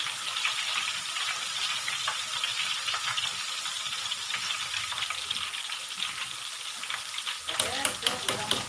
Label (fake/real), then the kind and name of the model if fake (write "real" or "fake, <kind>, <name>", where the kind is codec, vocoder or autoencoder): fake, vocoder, BigVGAN v2